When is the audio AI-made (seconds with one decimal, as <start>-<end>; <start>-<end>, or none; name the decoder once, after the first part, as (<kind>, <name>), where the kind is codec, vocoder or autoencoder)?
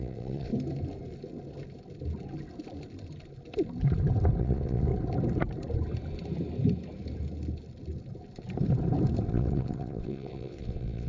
0.0-0.5 (vocoder, WaveNeXt); 4.4-4.9; 9.3-11.1